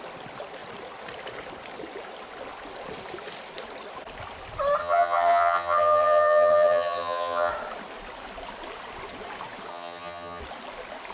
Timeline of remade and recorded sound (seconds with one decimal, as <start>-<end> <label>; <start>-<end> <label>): 0.0-4.8 recorded; 4.8-7.5 remade; 7.5-9.7 recorded; 9.7-10.4 remade; 10.4-11.1 recorded